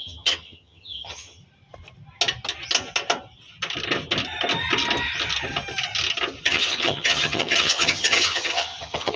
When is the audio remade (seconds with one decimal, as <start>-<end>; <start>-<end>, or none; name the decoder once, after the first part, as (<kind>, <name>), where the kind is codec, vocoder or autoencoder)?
0.0-1.4 (vocoder, HiFi-GAN); 6.4-9.2